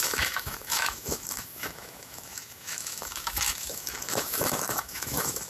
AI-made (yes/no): yes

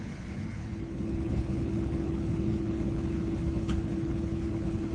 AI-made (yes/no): yes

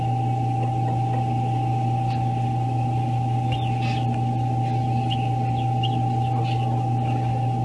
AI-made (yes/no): no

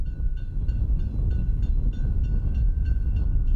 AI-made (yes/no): no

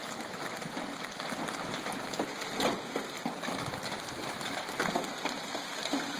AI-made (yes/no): no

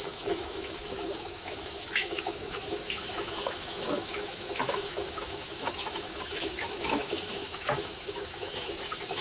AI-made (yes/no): yes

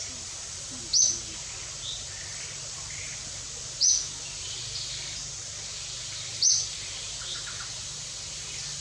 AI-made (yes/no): no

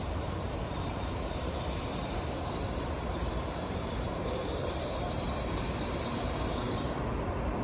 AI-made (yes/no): yes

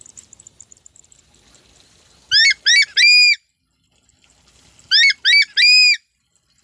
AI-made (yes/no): no